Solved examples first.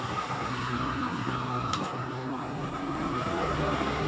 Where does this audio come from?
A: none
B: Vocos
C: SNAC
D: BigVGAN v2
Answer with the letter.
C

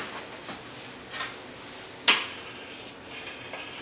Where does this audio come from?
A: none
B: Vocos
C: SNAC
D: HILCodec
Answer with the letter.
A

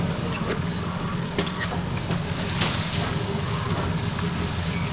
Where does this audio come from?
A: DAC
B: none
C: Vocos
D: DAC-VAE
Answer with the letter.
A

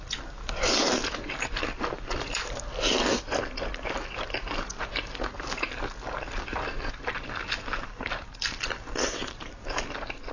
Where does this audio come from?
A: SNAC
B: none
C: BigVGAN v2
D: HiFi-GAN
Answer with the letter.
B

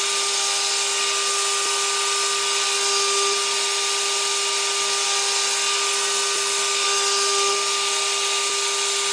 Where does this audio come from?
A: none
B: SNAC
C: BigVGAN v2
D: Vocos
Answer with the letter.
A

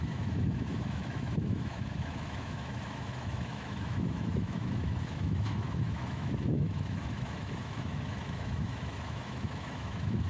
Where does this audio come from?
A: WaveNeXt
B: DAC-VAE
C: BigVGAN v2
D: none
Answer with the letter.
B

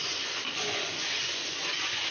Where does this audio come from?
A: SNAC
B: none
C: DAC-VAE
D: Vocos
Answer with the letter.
D